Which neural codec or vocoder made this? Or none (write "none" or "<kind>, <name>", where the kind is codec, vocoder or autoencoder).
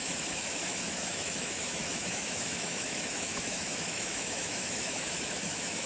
autoencoder, DAC-VAE